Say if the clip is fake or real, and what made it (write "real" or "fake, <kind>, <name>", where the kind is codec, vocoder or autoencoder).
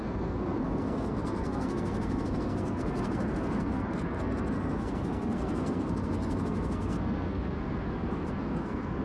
fake, codec, SNAC